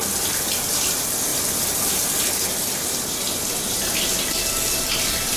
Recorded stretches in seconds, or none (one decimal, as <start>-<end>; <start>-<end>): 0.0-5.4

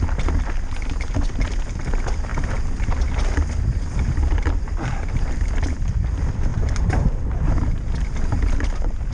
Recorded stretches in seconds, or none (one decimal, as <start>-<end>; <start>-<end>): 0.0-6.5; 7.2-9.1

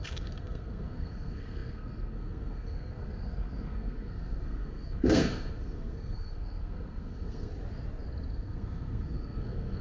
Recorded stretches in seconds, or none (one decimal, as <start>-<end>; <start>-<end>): 7.5-8.3